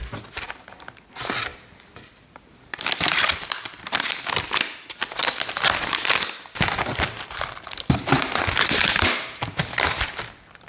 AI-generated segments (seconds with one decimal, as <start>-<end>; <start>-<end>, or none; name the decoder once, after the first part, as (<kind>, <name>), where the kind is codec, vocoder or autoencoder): 1.5-4.2 (vocoder, BigVGAN v2); 5.2-9.6